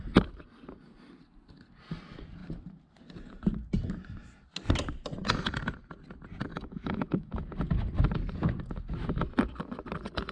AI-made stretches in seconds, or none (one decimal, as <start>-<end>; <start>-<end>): 6.5-7.3